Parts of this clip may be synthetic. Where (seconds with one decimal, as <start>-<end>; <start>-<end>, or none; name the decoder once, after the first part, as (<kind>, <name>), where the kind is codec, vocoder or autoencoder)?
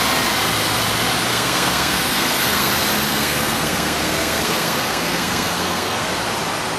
1.3-2.7 (codec, SNAC); 3.1-6.1